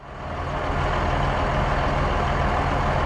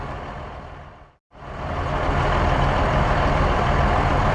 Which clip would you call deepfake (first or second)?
second